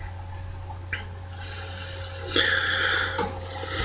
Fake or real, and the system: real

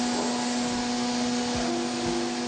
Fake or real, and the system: real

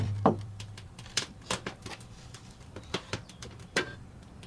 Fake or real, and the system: fake, vocoder, BigVGAN v2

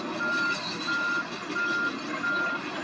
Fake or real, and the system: real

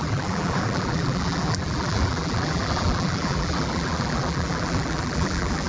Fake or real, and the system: fake, vocoder, BigVGAN v2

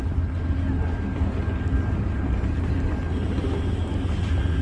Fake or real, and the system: real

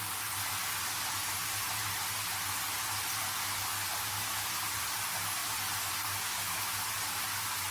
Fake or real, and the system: real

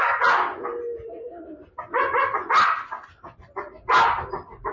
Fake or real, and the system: real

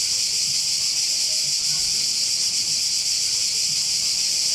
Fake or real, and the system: fake, vocoder, BigVGAN v2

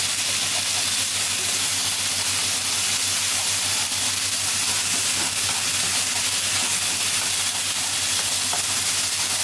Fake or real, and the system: real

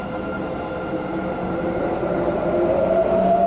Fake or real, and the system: fake, vocoder, BigVGAN v2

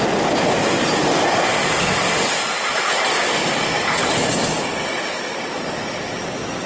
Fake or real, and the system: real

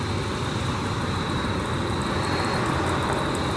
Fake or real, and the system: real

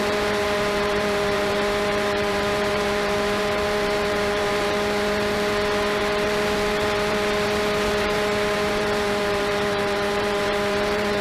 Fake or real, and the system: fake, vocoder, BigVGAN v2